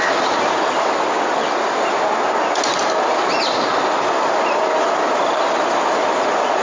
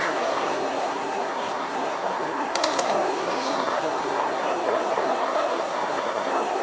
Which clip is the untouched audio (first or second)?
first